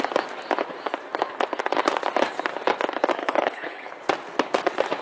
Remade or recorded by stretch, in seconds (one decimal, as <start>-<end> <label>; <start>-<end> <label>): 0.0-3.2 recorded; 3.2-3.9 remade; 3.9-5.0 recorded